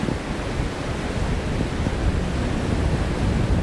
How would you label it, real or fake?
real